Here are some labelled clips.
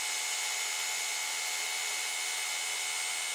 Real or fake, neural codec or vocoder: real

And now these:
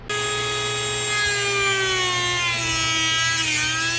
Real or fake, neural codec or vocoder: real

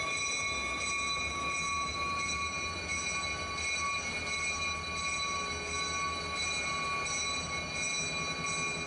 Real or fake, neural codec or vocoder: real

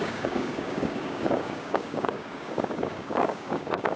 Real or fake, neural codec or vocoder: fake, codec, DAC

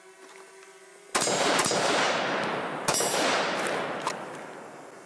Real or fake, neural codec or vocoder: real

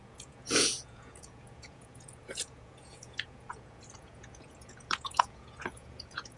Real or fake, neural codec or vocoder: fake, vocoder, Vocos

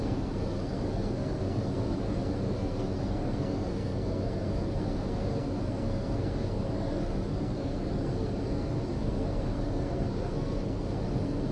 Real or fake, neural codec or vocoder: fake, codec, SNAC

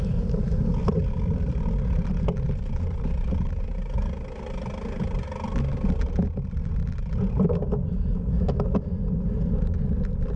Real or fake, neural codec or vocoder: real